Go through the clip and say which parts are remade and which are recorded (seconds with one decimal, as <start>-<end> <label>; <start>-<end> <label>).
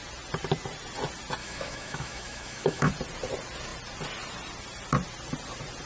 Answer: 0.0-1.4 recorded; 1.4-2.9 remade; 2.9-5.9 recorded